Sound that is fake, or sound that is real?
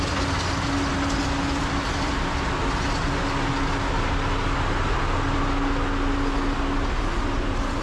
real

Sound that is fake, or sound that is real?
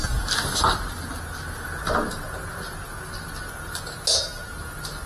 real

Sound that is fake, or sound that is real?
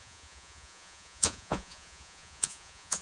fake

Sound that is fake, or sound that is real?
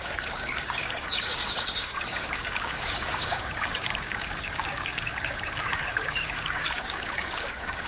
fake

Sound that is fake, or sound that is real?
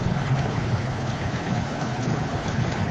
fake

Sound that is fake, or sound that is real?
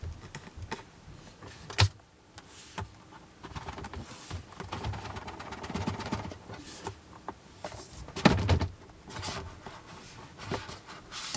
real